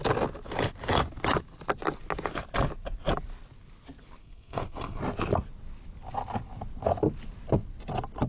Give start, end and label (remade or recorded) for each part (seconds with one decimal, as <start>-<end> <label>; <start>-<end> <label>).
0.0-4.2 recorded; 4.2-5.0 remade; 5.0-8.3 recorded

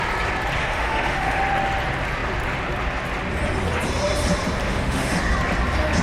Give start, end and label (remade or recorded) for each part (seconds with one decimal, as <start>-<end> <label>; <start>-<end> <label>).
0.0-0.6 recorded; 0.6-1.4 remade; 1.4-4.6 recorded; 4.6-5.2 remade; 5.2-6.0 recorded